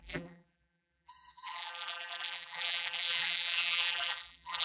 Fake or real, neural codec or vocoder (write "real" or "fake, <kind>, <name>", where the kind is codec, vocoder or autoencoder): fake, vocoder, BigVGAN v2